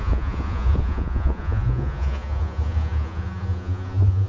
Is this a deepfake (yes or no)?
yes